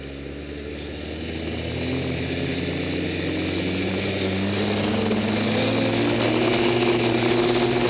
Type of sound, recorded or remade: recorded